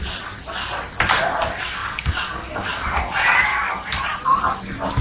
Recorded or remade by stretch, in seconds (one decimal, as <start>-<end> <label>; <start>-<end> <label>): 0.0-1.8 recorded; 1.8-3.1 remade; 3.1-3.5 recorded; 3.5-4.0 remade; 4.0-5.0 recorded